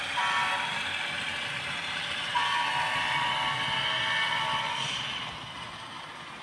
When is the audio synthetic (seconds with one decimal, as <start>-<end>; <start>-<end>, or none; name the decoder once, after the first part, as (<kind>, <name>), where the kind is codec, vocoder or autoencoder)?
none